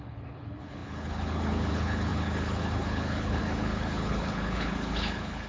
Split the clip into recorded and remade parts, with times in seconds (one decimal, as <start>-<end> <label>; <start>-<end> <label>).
0.0-5.5 remade